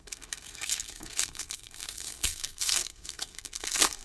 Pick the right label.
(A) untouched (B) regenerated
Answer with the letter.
B